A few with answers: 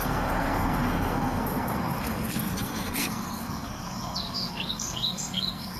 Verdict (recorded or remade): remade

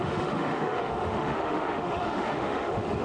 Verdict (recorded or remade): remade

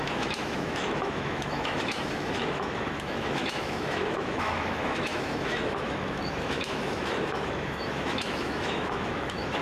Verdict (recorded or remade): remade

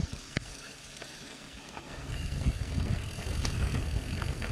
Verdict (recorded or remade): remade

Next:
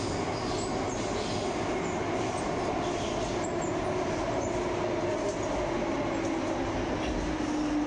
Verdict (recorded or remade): recorded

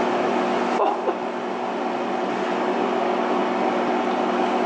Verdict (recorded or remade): recorded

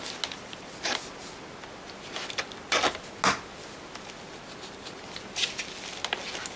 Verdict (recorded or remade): recorded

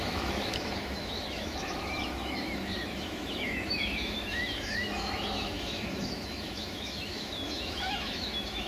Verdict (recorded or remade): remade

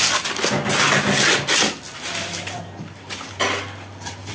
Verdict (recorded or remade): recorded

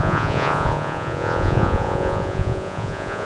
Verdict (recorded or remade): remade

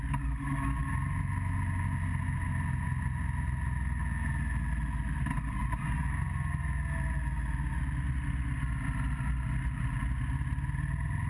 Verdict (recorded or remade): recorded